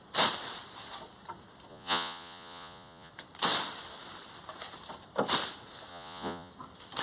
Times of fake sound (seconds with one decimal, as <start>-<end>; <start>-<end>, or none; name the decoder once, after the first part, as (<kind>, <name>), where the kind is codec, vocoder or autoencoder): 1.7-3.1 (vocoder, Vocos); 5.9-6.5